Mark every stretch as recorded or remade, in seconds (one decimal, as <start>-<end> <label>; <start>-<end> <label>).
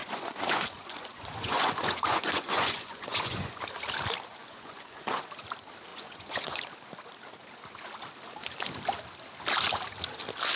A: 0.0-3.6 remade; 3.6-4.3 recorded; 4.3-5.3 remade; 5.3-5.9 recorded; 5.9-6.6 remade; 6.6-10.6 recorded